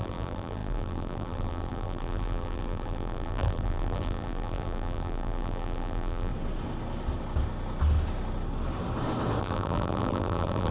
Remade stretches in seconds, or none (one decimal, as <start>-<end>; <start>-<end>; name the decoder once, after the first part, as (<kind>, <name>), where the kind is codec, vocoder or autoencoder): 0.0-6.3 (vocoder, BigVGAN v2); 9.4-10.7